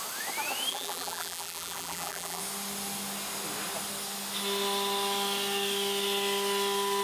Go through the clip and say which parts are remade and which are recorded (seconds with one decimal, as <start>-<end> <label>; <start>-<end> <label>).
0.0-0.7 recorded; 0.7-2.4 remade; 2.4-7.0 recorded